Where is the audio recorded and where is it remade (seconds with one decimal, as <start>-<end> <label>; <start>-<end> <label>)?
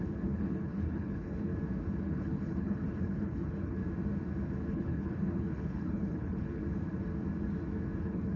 0.0-1.5 remade; 1.5-2.0 recorded; 2.0-3.8 remade; 3.8-4.7 recorded; 4.7-6.6 remade; 6.6-8.0 recorded; 8.0-8.4 remade